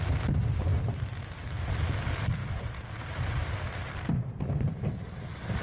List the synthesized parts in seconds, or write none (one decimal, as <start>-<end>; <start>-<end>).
2.4-4.1